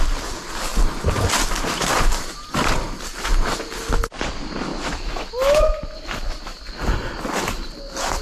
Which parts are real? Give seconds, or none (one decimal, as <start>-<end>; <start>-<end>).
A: 0.7-2.5; 3.1-3.8; 4.7-5.6; 6.5-7.4